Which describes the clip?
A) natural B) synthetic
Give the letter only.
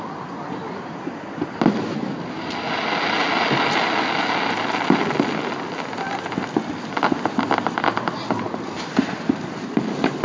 A